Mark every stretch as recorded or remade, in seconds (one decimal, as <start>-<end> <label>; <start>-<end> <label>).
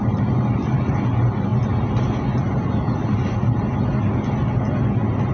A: 0.0-5.3 recorded